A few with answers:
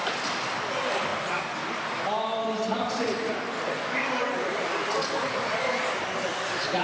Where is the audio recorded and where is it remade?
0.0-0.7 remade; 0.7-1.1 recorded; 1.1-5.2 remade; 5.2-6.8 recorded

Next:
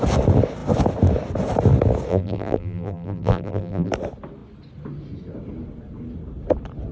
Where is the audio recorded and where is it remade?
0.0-2.1 recorded; 2.1-3.9 remade; 3.9-6.9 recorded

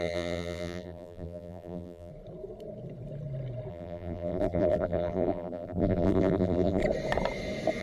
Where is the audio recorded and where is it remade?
0.0-2.1 remade; 2.1-3.7 recorded; 3.7-6.8 remade; 6.8-7.8 recorded

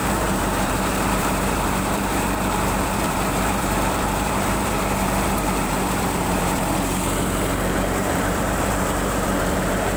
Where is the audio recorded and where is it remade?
0.0-6.6 remade; 6.6-7.4 recorded; 7.4-10.0 remade

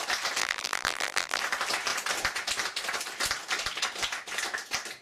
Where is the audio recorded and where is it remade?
0.0-0.4 recorded; 0.4-1.4 remade; 1.4-5.0 recorded

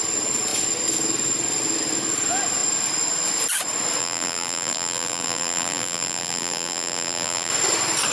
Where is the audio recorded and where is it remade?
0.0-4.0 recorded; 4.0-7.5 remade; 7.5-8.1 recorded

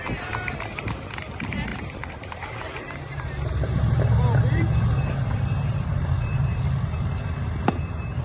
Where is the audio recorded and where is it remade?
0.0-1.7 recorded; 1.7-6.6 remade; 6.6-8.2 recorded

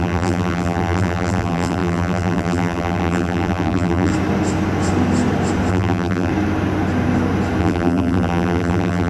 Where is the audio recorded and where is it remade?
0.0-4.1 remade; 4.1-5.7 recorded; 5.7-6.3 remade; 6.3-7.6 recorded; 7.6-9.1 remade